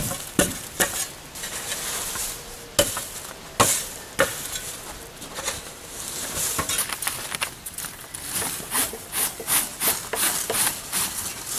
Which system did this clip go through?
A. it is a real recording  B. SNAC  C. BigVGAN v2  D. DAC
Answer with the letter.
A